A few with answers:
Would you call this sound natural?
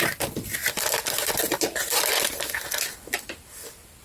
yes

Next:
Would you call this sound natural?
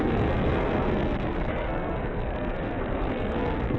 no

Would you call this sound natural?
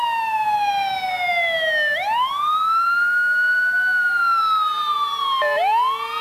yes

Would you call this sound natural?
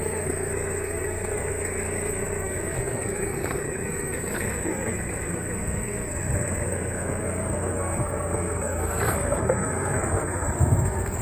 no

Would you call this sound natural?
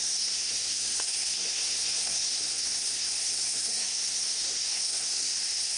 no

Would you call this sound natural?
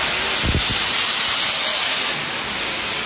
yes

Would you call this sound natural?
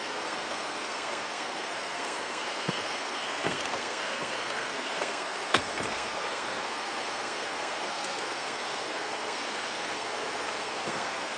no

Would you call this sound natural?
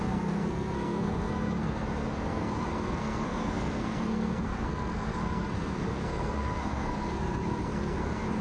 no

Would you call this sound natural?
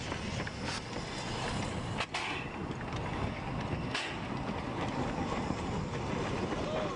yes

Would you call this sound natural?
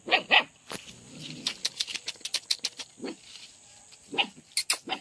yes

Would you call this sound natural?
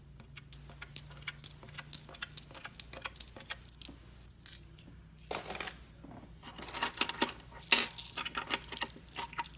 yes